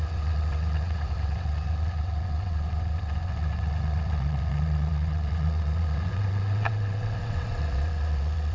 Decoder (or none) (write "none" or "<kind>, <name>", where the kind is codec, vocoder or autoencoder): vocoder, WaveNeXt